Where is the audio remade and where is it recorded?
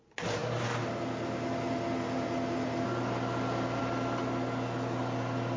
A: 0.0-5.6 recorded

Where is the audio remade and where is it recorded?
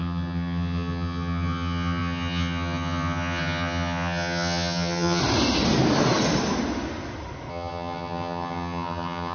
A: 0.0-5.2 remade; 5.2-7.5 recorded; 7.5-9.3 remade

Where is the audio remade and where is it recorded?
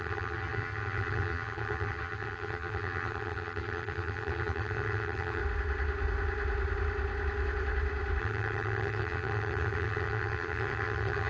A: 0.0-5.4 remade; 5.4-8.2 recorded; 8.2-11.3 remade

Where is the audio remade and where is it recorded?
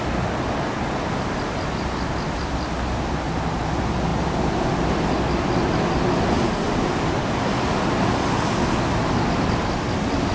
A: 0.0-10.3 recorded